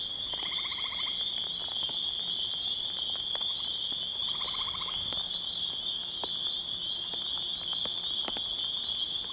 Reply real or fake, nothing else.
real